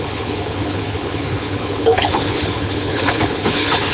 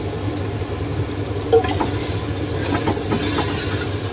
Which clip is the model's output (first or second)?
first